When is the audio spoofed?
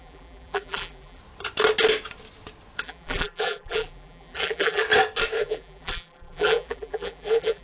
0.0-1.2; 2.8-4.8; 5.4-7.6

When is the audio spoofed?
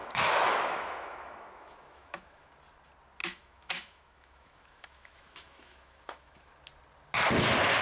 0.0-2.5; 3.2-6.5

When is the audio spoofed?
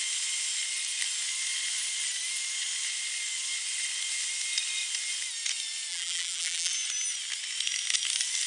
5.9-6.7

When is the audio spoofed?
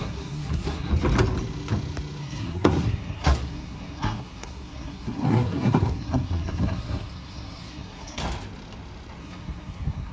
0.0-0.9; 2.2-8.2; 9.2-10.1